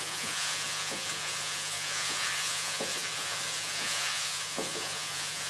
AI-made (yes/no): yes